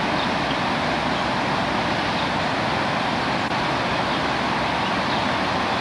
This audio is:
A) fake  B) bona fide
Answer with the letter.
B